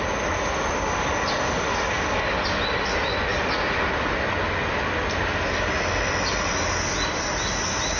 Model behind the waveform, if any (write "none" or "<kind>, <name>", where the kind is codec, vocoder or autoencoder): none